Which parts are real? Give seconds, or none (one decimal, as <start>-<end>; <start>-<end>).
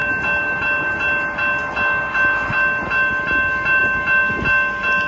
0.0-5.1